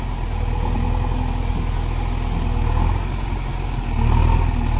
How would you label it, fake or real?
real